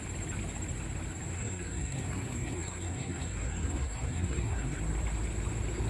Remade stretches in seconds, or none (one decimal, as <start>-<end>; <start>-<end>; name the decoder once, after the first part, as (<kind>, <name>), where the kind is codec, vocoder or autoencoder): 1.3-4.8 (codec, SNAC)